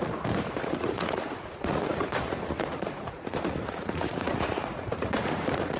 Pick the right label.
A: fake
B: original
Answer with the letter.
A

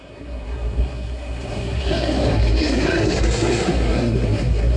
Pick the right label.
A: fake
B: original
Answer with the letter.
A